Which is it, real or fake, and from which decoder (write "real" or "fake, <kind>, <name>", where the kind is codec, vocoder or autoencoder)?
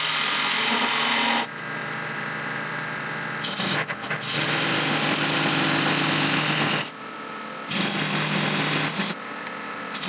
real